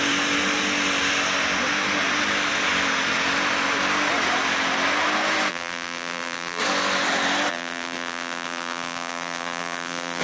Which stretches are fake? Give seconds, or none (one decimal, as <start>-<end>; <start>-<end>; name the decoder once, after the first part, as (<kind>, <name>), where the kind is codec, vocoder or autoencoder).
5.5-6.6 (vocoder, BigVGAN v2); 7.5-10.2